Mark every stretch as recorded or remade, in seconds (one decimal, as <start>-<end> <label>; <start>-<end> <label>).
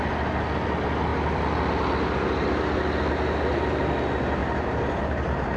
0.0-4.4 recorded; 4.4-5.6 remade